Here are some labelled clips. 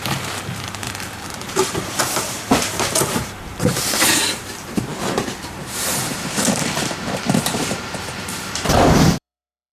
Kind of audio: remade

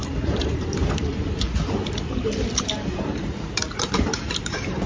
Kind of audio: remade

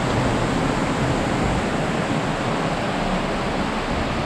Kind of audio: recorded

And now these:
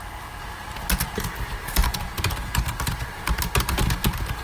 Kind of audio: recorded